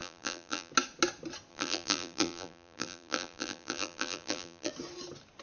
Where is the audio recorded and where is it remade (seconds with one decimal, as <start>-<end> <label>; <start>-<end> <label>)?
0.0-0.7 remade; 0.7-1.5 recorded; 1.5-4.7 remade; 4.7-5.4 recorded